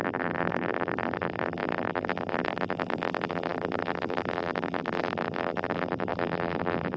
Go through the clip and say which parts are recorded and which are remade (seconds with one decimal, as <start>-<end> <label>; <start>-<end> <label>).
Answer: 0.0-7.0 remade